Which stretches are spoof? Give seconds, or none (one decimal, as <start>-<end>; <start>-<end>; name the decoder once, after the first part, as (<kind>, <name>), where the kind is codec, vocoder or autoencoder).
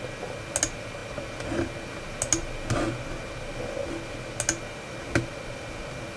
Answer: none